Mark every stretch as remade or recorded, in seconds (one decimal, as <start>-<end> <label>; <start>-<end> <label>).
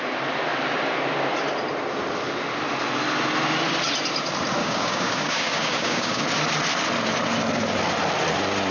0.0-4.6 recorded; 4.6-6.2 remade; 6.2-8.7 recorded